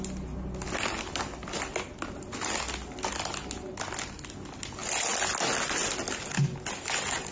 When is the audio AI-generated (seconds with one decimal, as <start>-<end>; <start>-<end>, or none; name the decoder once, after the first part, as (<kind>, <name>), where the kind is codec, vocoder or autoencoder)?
none